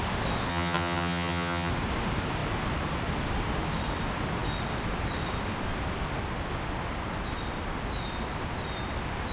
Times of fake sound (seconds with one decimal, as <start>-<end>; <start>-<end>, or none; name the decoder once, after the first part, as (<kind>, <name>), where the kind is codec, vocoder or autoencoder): 0.5-1.7 (vocoder, HiFi-GAN)